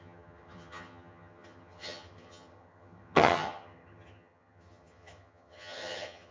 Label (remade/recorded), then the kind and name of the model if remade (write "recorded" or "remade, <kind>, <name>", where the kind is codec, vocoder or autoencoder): remade, vocoder, HiFi-GAN